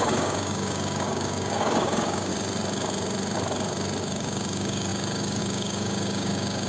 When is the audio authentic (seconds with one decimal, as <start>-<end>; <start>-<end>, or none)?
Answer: 2.3-4.0